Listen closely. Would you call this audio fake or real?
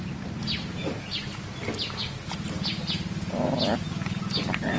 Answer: real